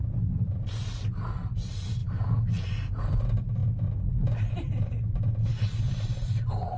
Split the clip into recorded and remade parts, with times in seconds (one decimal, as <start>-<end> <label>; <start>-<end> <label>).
0.0-2.0 remade; 2.0-3.0 recorded; 3.0-3.6 remade; 3.6-4.5 recorded; 4.5-6.8 remade